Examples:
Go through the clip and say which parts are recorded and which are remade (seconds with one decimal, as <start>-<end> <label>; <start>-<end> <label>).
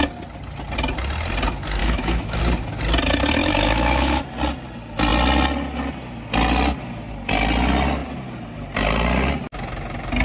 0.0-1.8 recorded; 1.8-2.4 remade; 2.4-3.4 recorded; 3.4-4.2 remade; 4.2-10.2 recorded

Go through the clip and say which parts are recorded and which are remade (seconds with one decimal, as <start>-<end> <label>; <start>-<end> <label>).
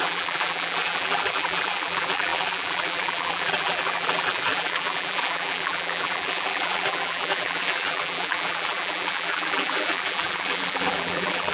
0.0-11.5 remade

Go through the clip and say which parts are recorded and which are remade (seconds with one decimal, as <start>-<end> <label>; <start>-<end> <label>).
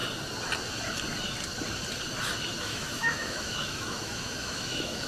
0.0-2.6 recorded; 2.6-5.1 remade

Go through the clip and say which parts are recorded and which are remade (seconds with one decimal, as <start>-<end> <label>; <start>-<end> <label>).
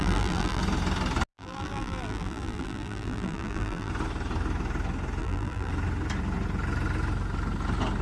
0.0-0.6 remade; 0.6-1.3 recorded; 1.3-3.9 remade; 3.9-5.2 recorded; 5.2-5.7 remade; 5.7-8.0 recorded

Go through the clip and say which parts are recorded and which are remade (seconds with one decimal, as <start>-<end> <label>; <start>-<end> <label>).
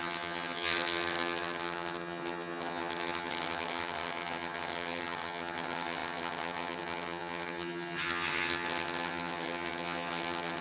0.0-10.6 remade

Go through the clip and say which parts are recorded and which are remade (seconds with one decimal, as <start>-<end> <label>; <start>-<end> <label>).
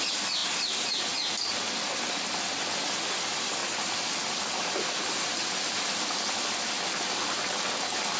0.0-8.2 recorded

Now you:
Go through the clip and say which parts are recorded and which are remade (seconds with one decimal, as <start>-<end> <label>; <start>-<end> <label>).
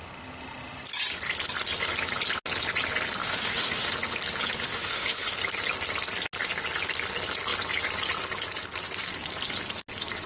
0.0-3.2 recorded; 3.2-3.9 remade; 3.9-4.7 recorded; 4.7-5.3 remade; 5.3-10.3 recorded